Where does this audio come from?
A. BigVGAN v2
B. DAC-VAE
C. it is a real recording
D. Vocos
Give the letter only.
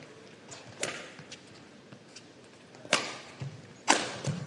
C